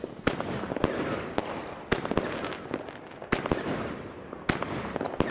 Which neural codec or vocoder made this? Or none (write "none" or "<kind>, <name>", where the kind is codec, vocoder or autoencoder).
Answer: none